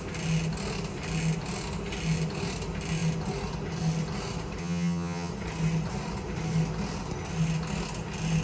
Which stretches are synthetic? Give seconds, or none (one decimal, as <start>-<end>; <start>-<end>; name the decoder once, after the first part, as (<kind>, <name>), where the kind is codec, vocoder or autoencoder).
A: 4.6-5.3 (vocoder, HiFi-GAN)

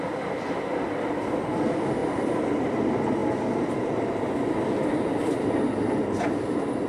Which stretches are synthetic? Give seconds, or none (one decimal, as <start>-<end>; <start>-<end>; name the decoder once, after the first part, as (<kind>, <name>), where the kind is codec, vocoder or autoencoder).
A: 2.0-2.7 (vocoder, BigVGAN v2)

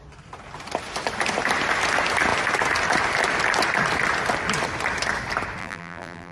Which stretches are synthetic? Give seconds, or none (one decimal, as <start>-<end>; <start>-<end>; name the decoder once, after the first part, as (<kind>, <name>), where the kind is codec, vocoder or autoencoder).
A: 5.6-6.3 (vocoder, BigVGAN v2)

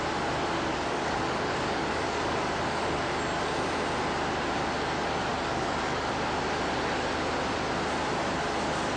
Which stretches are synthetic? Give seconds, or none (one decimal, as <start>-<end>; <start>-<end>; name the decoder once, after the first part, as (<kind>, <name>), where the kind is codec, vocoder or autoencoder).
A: 0.7-3.1 (codec, DAC); 5.3-6.1

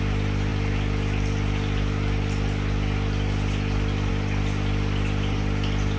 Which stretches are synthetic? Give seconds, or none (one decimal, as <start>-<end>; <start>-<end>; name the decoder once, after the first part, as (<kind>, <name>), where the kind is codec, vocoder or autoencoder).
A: none

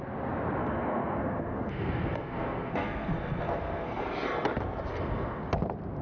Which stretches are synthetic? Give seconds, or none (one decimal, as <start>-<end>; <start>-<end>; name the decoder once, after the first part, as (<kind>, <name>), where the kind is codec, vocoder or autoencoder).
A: 0.6-4.0 (codec, SNAC); 4.9-5.5

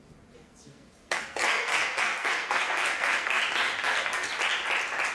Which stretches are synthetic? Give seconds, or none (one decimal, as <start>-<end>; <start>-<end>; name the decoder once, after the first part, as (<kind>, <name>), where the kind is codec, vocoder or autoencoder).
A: 0.4-3.4 (codec, SNAC); 3.8-4.3